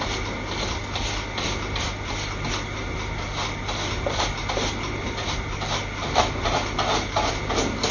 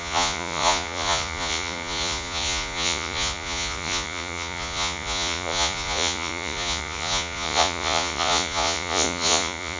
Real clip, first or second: first